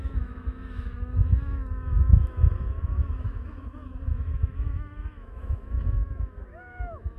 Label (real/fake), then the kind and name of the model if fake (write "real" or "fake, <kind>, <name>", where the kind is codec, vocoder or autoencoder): fake, autoencoder, DAC-VAE